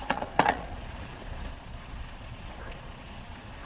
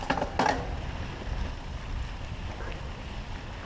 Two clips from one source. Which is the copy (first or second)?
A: first